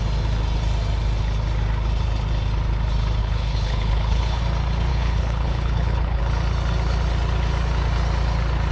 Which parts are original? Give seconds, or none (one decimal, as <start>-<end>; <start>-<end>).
0.0-3.2; 4.4-4.9; 6.2-8.7